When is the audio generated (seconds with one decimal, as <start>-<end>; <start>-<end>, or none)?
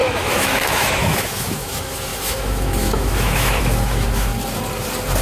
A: 0.0-4.3